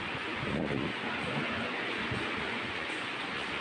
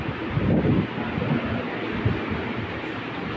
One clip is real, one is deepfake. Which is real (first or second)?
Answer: second